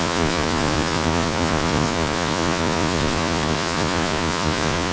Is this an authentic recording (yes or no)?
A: no